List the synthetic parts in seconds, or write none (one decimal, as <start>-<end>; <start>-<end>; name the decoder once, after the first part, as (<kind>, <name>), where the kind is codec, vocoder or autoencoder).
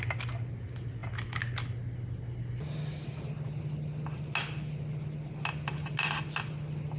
none